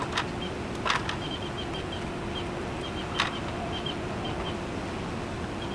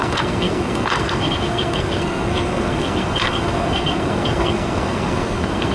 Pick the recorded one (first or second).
first